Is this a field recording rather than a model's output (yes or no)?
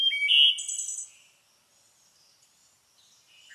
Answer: yes